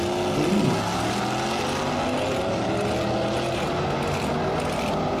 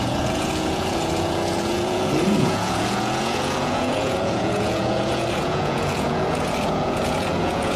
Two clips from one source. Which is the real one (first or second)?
first